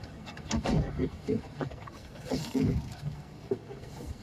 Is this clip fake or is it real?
fake